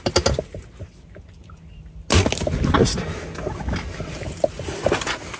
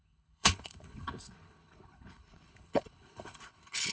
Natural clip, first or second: first